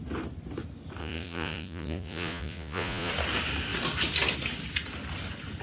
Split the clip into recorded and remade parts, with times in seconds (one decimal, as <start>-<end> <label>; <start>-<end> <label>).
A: 0.0-1.0 recorded; 1.0-3.1 remade; 3.1-5.6 recorded